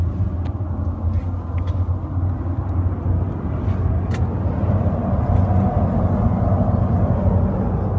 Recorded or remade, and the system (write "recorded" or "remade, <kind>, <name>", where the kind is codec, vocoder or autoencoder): recorded